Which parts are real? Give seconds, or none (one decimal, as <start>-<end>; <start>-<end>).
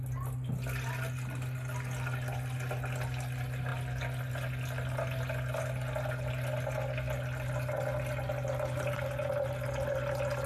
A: 0.0-10.5